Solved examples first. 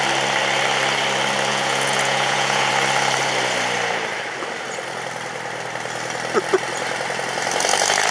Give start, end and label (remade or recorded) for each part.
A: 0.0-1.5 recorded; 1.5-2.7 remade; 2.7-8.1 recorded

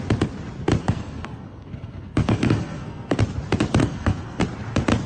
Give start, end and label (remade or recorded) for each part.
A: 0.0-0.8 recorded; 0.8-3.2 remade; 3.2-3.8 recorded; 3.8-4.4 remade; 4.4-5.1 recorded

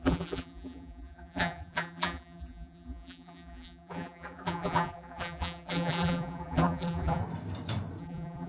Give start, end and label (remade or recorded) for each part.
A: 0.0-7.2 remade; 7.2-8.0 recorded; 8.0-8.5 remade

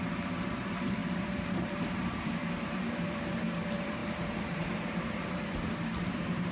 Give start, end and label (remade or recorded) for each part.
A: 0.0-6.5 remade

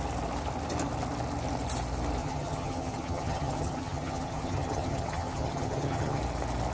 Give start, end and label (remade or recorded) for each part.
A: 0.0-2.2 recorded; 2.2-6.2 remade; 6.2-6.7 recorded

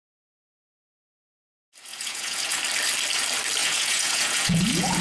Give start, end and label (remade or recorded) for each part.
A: 0.0-1.9 recorded; 1.9-2.6 remade; 2.6-3.6 recorded; 3.6-5.0 remade

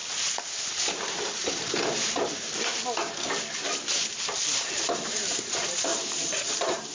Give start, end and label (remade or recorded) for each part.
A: 0.0-0.8 recorded; 0.8-2.7 remade; 2.7-3.7 recorded; 3.7-6.9 remade